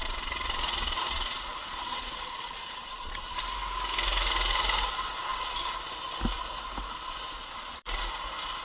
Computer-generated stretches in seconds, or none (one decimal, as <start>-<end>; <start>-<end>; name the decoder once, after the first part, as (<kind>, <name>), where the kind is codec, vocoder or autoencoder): 0.0-3.4 (vocoder, Vocos); 7.4-8.0